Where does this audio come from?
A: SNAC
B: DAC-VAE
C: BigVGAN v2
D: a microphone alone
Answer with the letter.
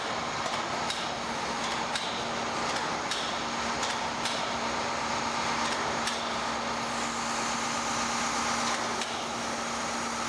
D